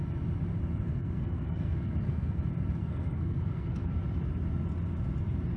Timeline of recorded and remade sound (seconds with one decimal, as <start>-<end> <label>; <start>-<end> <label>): 0.0-0.9 recorded; 0.9-2.4 remade; 2.4-2.8 recorded; 2.8-3.9 remade; 3.9-5.6 recorded